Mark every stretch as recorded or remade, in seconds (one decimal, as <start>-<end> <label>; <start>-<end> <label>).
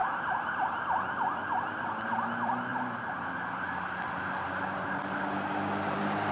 0.0-2.7 remade; 2.7-5.5 recorded; 5.5-6.3 remade